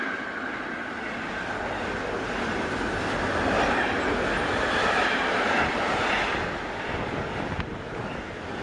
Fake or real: real